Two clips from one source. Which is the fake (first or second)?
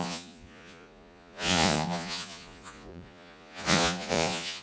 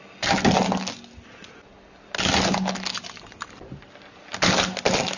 first